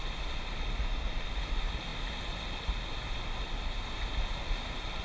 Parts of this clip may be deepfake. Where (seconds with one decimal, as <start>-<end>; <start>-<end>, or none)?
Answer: none